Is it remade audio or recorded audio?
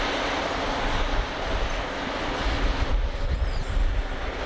recorded